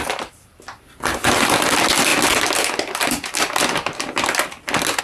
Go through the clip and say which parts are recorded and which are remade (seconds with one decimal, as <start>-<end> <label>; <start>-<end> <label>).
0.0-5.0 recorded